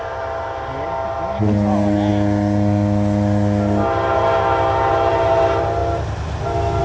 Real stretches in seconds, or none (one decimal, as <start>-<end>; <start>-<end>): 0.0-6.8